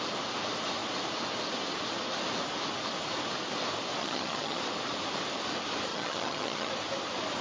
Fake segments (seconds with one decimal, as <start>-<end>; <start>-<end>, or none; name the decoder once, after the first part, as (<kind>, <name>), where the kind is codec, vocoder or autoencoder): 4.0-4.6 (vocoder, HiFi-GAN); 5.9-6.7